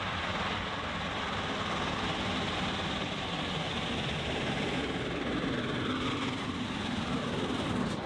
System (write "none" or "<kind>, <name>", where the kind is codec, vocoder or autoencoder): none